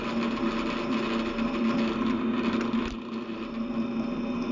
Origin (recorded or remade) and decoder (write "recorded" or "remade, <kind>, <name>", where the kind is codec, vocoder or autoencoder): recorded